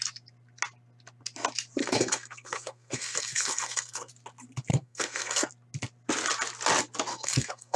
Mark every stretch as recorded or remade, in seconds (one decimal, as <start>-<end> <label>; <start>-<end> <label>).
0.0-1.8 recorded; 1.8-4.1 remade; 4.1-4.7 recorded; 4.7-5.5 remade; 5.5-7.1 recorded; 7.1-7.8 remade